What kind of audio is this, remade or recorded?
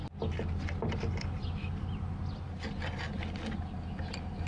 recorded